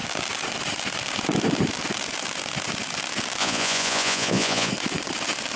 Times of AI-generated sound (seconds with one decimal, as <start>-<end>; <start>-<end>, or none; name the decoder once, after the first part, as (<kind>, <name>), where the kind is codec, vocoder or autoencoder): 3.4-4.7 (vocoder, Vocos)